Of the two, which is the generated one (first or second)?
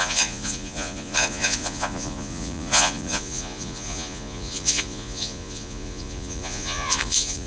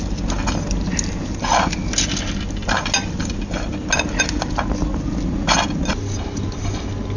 first